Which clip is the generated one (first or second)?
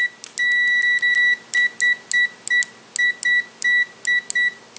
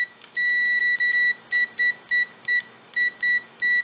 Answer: second